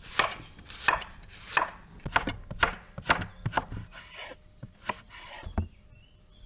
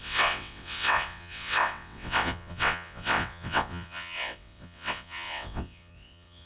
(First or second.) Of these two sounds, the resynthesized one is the second